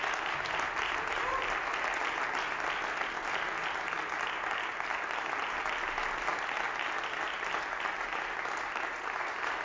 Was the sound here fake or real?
real